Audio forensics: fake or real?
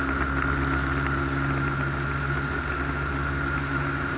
real